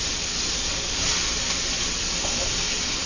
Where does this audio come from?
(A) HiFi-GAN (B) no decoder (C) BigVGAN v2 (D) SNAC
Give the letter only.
B